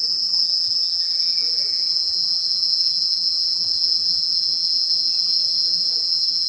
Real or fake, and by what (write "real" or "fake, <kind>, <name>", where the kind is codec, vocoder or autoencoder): fake, vocoder, BigVGAN v2